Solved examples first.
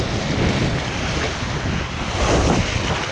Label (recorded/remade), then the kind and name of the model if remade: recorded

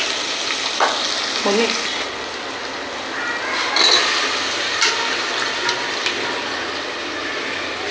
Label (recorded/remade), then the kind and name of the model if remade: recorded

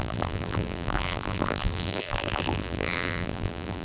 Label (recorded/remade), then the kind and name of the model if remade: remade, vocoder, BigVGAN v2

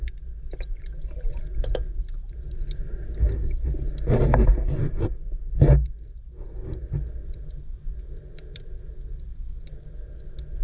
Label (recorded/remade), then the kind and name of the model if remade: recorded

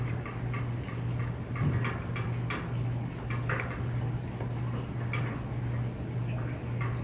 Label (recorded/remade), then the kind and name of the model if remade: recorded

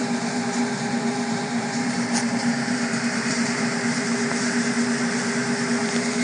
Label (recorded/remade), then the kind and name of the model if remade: remade, vocoder, BigVGAN v2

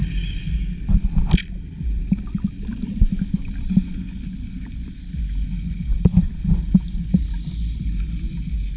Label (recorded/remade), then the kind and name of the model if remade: recorded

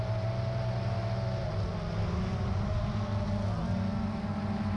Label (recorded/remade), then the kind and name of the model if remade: recorded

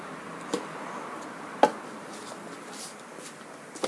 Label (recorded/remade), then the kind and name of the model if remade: recorded